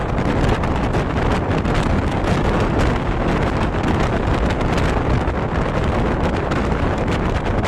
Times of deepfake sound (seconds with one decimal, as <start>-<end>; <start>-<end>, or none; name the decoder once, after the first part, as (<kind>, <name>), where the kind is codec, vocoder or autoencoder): none